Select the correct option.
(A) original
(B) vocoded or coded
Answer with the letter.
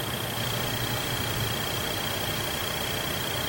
A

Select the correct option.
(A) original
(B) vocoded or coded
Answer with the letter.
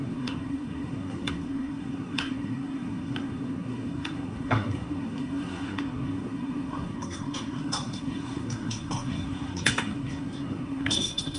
B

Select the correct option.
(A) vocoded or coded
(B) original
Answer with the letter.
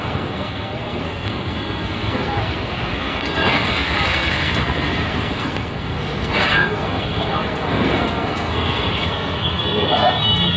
A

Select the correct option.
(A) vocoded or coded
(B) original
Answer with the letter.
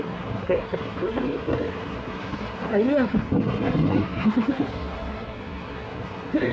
A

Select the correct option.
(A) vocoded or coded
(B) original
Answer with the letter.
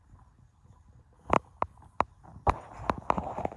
B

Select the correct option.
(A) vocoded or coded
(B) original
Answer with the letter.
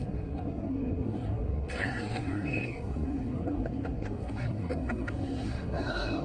A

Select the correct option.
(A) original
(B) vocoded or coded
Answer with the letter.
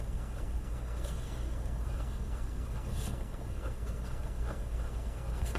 B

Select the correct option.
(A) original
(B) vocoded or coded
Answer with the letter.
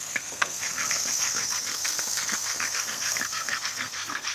B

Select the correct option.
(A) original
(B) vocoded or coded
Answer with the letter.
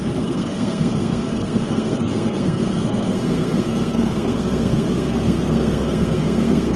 B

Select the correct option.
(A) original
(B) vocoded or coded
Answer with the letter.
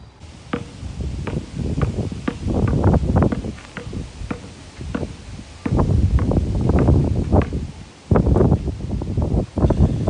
A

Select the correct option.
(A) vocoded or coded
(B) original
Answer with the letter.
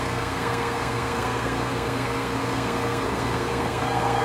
A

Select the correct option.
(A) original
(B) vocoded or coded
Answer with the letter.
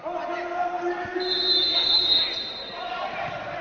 A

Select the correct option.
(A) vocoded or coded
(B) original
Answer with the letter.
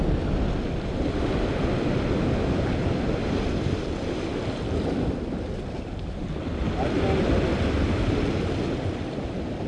B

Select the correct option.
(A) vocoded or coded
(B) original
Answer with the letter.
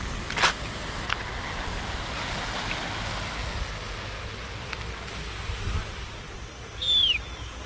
B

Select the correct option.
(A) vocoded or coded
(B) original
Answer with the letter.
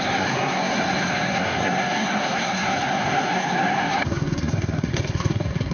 A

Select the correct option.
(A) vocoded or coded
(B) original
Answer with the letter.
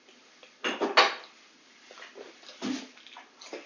B